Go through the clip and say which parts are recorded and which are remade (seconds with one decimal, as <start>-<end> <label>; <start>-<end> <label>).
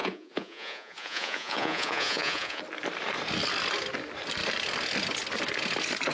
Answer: 0.0-2.6 remade; 2.6-6.1 recorded